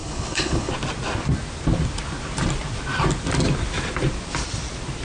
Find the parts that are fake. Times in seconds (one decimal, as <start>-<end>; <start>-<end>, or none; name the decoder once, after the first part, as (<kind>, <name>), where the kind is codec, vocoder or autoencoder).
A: 0.0-0.7 (codec, HILCodec)